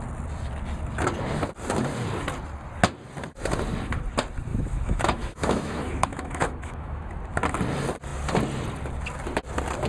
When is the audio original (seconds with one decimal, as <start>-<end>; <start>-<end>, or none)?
0.0-4.5; 7.1-9.9